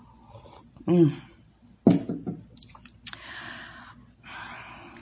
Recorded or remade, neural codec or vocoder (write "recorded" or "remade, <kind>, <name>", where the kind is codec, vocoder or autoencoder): recorded